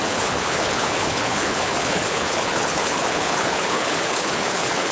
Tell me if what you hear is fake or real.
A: fake